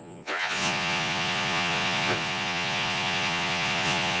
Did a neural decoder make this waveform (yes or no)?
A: yes